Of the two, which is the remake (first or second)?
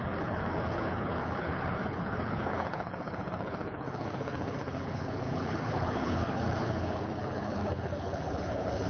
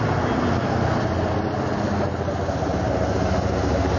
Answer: first